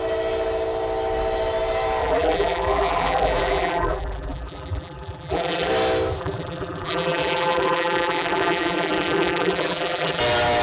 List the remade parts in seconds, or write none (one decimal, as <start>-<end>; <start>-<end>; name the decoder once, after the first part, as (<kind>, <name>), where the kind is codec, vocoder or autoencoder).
2.0-5.7 (vocoder, BigVGAN v2); 6.2-10.2